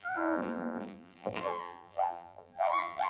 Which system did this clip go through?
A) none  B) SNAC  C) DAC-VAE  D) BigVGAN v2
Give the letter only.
D